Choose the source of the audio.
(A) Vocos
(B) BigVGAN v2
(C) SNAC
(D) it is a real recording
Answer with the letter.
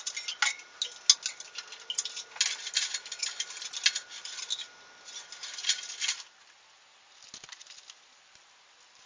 D